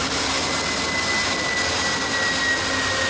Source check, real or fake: real